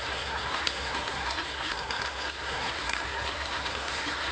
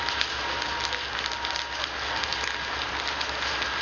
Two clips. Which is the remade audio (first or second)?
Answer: first